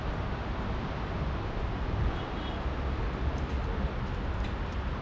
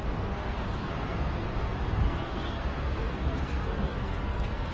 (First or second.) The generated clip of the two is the second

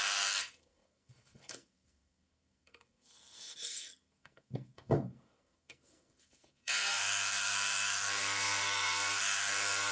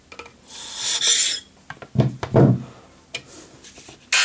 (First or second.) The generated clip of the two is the first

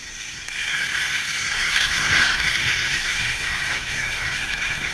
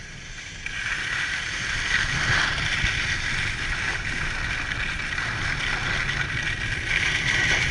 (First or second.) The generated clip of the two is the first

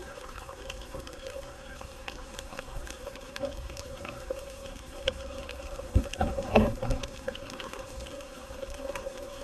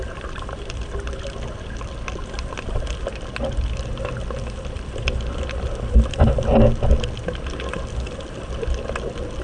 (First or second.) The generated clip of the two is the first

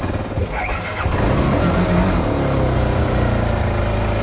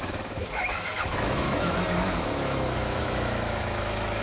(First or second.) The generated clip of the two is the second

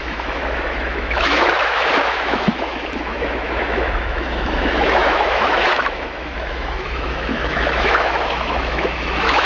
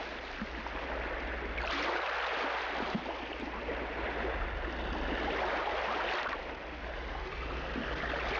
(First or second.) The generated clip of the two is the first